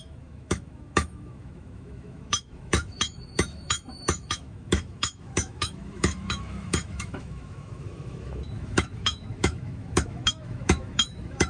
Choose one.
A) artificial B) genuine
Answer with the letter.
A